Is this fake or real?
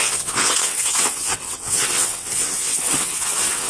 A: fake